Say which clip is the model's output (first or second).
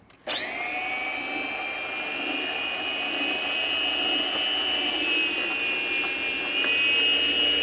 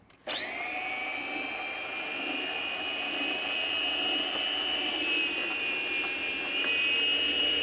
second